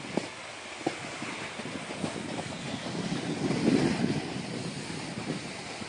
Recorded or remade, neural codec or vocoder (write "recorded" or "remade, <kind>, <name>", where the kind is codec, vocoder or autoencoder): recorded